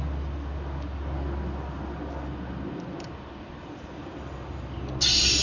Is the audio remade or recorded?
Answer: recorded